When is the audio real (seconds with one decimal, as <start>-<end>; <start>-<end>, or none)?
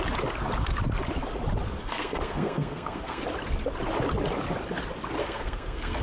0.0-1.8; 3.2-5.2